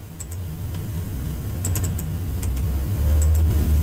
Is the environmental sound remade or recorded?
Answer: recorded